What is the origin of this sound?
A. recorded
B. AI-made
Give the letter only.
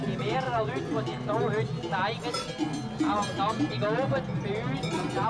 A